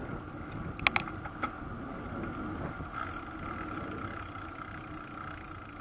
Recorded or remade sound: recorded